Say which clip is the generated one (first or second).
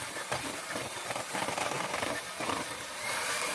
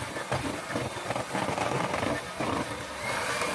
first